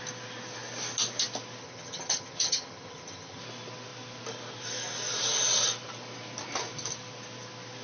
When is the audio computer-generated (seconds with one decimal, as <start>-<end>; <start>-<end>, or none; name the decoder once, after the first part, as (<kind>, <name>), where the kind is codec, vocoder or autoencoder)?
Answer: 1.6-3.4 (vocoder, HiFi-GAN)